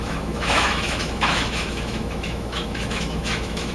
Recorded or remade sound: remade